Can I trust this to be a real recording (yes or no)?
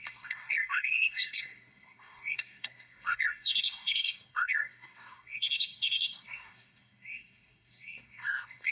no